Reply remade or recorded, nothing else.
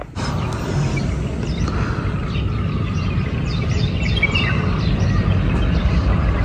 recorded